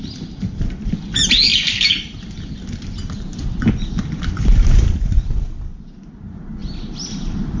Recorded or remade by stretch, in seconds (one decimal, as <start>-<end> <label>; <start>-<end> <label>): 0.0-7.6 recorded